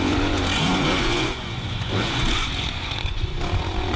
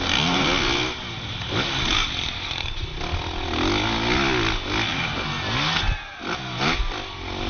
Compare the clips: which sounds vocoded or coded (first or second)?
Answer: first